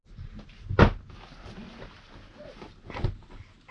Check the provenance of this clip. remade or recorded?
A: recorded